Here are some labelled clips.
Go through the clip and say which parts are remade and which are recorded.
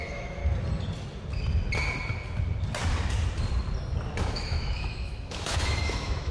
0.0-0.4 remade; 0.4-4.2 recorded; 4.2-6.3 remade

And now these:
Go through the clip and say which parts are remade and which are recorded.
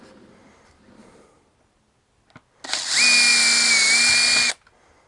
0.0-5.1 recorded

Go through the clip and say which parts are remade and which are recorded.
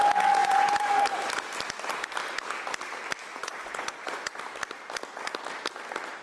0.0-0.4 recorded; 0.4-1.0 remade; 1.0-3.3 recorded; 3.3-4.4 remade; 4.4-6.2 recorded